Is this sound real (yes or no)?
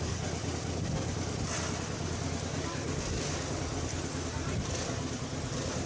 yes